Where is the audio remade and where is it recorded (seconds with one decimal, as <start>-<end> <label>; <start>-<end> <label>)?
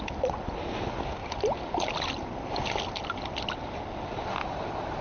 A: 0.0-1.2 recorded; 1.2-4.0 remade; 4.0-5.0 recorded